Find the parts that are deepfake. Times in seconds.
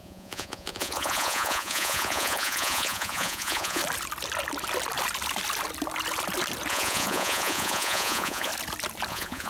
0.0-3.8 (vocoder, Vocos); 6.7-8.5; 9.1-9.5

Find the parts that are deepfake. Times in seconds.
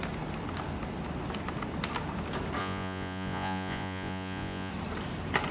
2.6-4.7 (vocoder, Vocos)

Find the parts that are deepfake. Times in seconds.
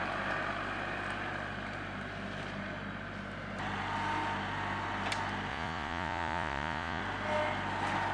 5.5-7.0 (vocoder, Vocos)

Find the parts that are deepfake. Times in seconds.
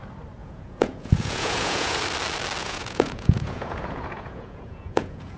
0.4-2.0 (vocoder, Vocos); 2.6-5.4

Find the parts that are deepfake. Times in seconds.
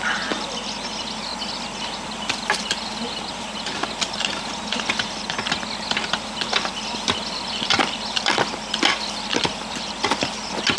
none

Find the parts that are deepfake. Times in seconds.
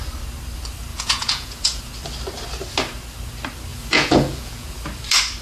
0.9-1.8 (vocoder, Vocos); 3.7-4.7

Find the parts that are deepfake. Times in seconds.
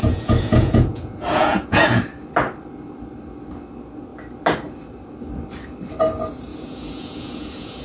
0.0-2.0 (vocoder, Vocos); 6.5-7.8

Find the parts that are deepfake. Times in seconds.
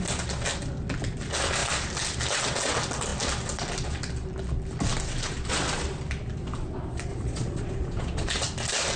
7.1-8.3 (vocoder, Vocos)